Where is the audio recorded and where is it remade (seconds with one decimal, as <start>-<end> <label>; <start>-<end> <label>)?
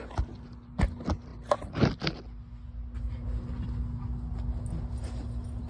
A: 0.0-5.7 recorded